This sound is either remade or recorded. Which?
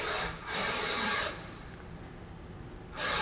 remade